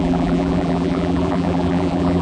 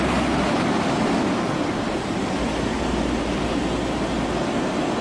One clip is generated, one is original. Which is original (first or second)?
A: second